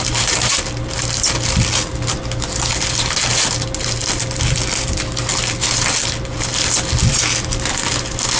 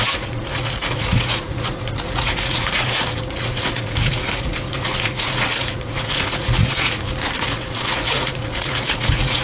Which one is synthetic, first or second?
second